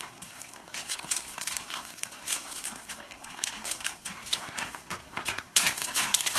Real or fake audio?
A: fake